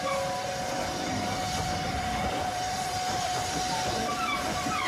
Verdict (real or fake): real